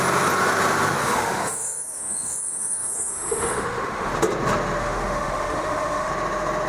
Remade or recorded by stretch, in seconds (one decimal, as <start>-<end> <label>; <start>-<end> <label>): 0.0-1.0 recorded; 1.0-4.1 remade; 4.1-4.8 recorded; 4.8-6.1 remade; 6.1-6.7 recorded